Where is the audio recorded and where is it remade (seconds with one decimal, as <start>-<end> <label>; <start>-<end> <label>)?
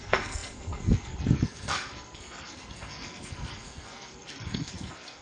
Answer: 0.0-5.2 remade